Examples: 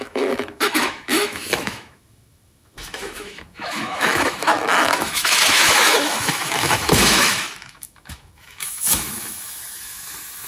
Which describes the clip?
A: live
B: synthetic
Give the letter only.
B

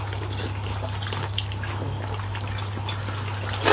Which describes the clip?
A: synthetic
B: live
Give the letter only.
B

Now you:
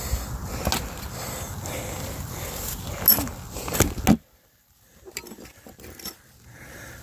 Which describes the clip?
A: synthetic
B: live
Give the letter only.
B